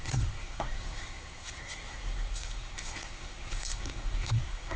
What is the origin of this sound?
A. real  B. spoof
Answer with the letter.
B